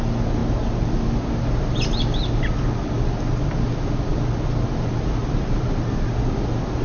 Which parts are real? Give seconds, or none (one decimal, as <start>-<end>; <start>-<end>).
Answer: 0.0-6.8